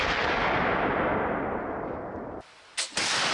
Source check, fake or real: real